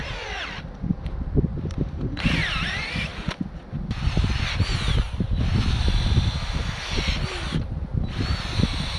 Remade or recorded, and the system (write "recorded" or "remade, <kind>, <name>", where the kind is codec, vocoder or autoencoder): recorded